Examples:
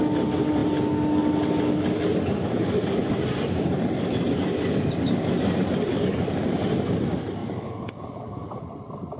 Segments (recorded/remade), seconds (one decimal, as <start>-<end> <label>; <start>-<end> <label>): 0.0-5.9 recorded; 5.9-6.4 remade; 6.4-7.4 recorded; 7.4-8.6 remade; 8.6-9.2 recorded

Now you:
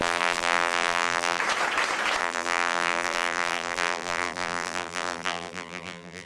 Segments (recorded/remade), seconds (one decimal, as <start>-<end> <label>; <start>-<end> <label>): 0.0-1.4 remade; 1.4-2.2 recorded; 2.2-6.3 remade

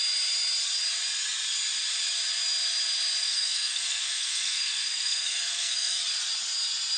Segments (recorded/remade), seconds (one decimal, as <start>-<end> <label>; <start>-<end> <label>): 0.0-3.2 recorded; 3.2-6.0 remade; 6.0-7.0 recorded

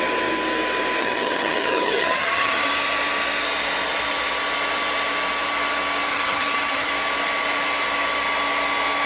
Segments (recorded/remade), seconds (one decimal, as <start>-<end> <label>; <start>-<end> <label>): 0.0-1.0 recorded; 1.0-2.7 remade; 2.7-6.1 recorded; 6.1-6.9 remade; 6.9-9.1 recorded

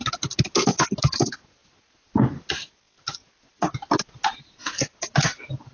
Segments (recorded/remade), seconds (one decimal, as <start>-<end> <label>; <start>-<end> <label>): 0.0-5.7 recorded

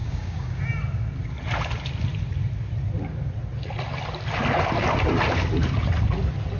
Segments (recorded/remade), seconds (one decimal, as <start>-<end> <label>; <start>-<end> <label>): 0.0-0.6 remade; 0.6-6.6 recorded